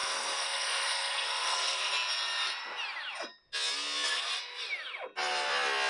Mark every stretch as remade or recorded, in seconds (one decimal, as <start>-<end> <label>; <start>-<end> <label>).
0.0-1.9 remade; 1.9-5.9 recorded